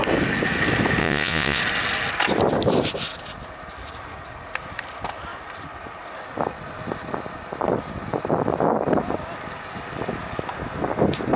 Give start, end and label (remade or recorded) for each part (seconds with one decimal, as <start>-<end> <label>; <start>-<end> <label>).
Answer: 0.0-1.0 recorded; 1.0-1.6 remade; 1.6-11.4 recorded